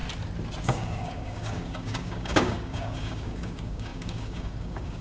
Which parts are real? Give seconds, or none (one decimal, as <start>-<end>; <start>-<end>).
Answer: 0.0-0.6